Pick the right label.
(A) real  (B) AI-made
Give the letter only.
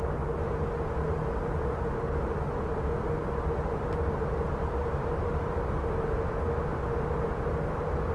A